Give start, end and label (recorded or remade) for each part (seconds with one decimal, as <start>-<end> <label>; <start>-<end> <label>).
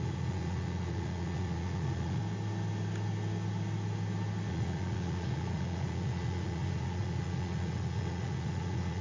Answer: 0.0-2.2 remade; 2.2-4.5 recorded; 4.5-9.0 remade